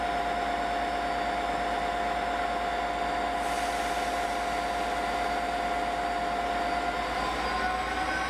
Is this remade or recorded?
recorded